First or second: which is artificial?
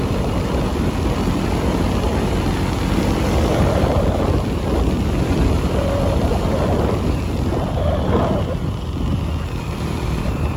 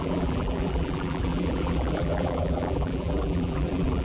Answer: second